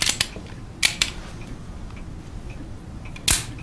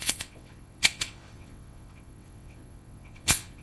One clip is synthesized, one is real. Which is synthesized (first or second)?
second